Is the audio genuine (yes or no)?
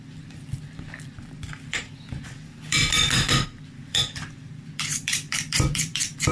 no